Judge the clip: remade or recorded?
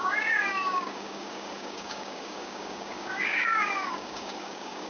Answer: remade